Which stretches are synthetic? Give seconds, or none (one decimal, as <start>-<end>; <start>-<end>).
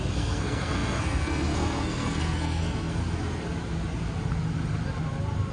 0.0-3.0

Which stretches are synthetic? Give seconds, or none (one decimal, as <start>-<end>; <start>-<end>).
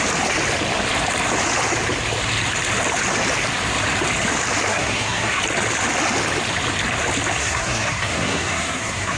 4.7-5.4; 7.4-9.2